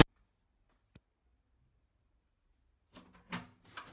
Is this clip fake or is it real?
real